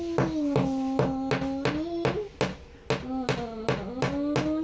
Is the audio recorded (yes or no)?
yes